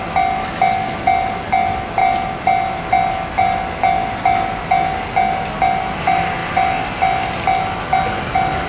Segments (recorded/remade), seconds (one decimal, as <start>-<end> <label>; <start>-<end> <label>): 0.0-8.7 recorded